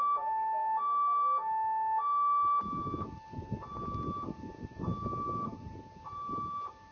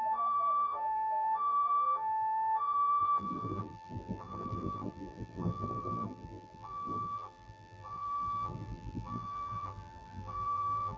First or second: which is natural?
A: first